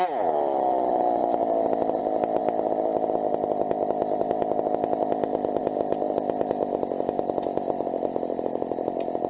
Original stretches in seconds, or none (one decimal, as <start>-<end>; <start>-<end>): 0.0-9.3